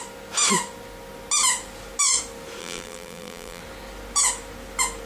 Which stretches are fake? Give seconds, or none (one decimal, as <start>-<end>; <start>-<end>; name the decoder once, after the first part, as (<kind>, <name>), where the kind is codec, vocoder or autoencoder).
2.6-3.6 (vocoder, BigVGAN v2)